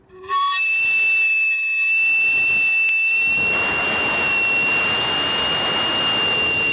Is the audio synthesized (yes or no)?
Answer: no